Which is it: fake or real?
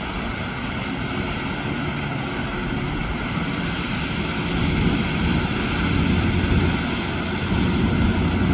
real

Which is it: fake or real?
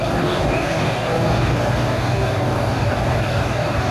fake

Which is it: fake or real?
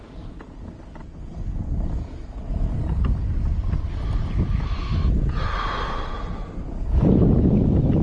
real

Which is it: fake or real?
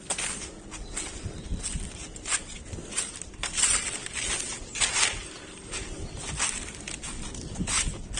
real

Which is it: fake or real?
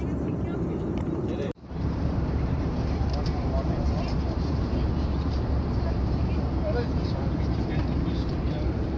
fake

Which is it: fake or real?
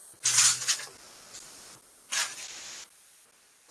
real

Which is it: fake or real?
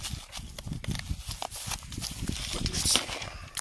real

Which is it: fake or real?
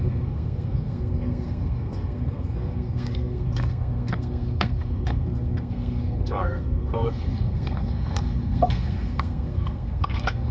fake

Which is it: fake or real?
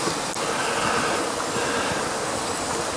real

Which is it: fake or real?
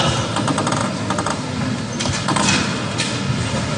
real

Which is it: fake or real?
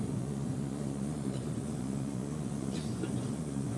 fake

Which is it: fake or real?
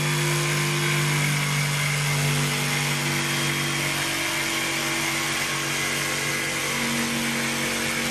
real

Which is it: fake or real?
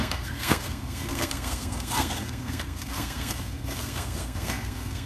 fake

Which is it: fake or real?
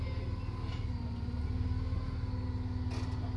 real